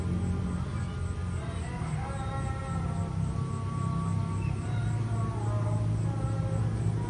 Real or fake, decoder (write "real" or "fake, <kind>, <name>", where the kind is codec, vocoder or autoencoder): real